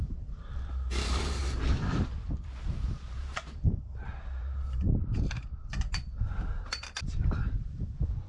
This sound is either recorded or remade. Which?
remade